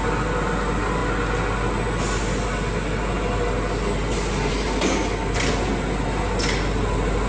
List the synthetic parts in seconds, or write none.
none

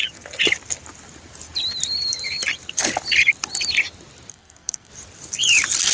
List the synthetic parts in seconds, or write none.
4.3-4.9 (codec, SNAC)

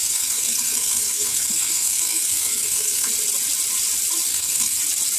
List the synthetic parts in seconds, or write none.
0.0-3.1 (codec, SNAC); 4.3-4.8

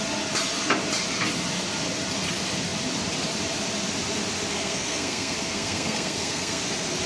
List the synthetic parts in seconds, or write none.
4.5-6.6 (codec, SNAC)

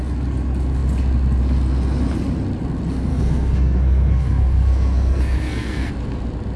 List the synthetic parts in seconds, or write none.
3.1-5.9 (codec, SNAC)